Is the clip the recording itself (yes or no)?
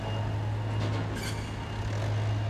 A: yes